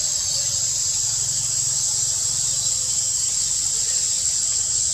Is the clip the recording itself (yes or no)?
yes